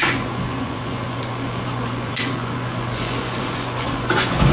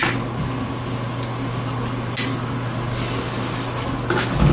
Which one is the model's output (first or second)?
first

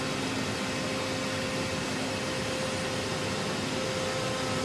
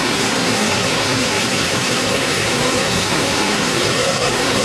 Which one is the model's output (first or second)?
second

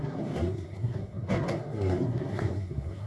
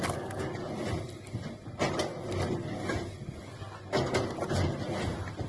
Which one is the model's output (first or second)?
first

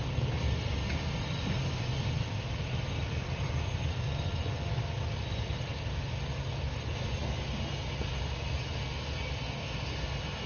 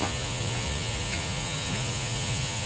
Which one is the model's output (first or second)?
second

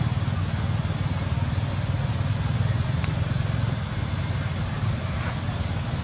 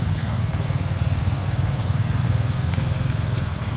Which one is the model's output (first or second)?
second